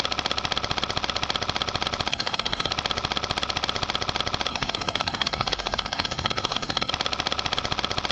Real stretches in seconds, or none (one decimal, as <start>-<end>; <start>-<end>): 0.0-2.1; 2.7-4.5; 6.9-8.1